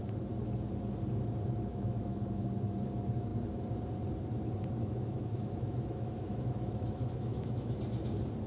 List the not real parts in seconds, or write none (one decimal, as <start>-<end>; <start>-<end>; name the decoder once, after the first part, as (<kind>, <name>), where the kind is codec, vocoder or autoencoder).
1.7-2.2 (autoencoder, DAC-VAE); 4.8-7.8